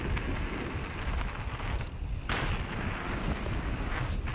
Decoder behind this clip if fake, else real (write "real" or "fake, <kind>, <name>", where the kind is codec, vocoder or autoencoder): real